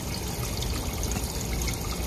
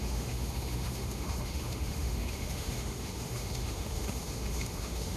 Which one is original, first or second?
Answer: first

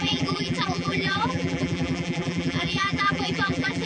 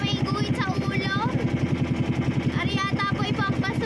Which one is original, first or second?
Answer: second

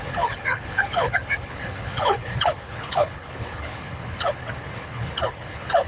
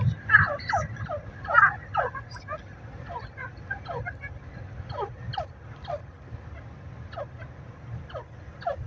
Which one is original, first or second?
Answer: second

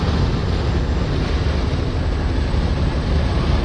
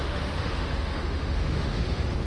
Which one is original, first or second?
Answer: first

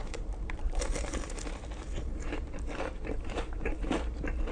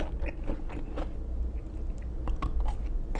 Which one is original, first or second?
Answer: second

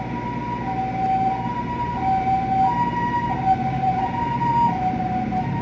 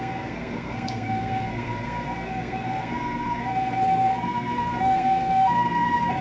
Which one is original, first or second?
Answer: first